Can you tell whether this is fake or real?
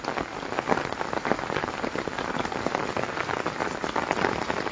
real